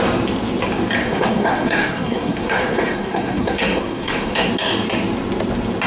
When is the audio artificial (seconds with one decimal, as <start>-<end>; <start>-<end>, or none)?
1.0-4.5